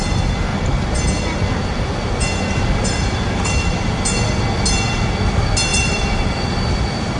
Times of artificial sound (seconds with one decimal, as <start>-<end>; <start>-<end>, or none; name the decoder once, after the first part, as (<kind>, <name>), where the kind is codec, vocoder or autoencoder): 0.5-1.0 (vocoder, BigVGAN v2); 5.7-6.7